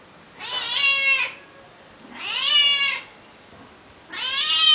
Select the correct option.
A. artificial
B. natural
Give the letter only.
B